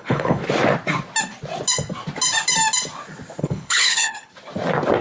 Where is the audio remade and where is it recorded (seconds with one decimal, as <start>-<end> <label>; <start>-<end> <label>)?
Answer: 0.0-0.4 remade; 0.4-3.4 recorded; 3.4-4.3 remade; 4.3-5.0 recorded

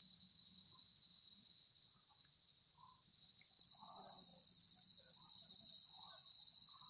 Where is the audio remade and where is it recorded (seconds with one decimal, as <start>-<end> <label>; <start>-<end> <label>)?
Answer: 0.0-6.9 recorded

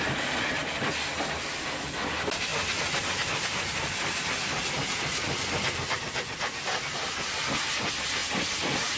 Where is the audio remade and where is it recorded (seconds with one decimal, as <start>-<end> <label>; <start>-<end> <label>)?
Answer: 0.0-9.0 recorded

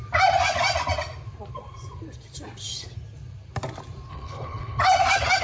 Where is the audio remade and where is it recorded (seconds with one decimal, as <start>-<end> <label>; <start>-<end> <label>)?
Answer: 0.0-4.1 recorded; 4.1-4.8 remade; 4.8-5.4 recorded

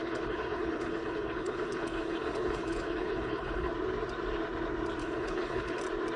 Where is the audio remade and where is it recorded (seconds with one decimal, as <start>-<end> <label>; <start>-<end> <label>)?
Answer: 0.0-3.7 remade; 3.7-5.0 recorded; 5.0-5.8 remade; 5.8-6.2 recorded

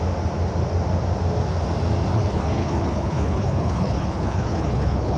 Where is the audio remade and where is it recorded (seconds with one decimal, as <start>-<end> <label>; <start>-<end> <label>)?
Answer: 0.0-2.1 recorded; 2.1-5.2 remade

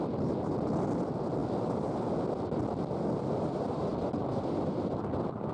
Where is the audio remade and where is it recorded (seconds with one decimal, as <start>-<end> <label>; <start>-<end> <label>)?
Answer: 0.0-5.5 recorded